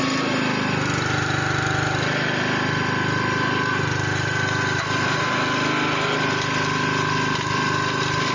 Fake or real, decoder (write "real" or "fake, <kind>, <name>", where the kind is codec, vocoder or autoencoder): real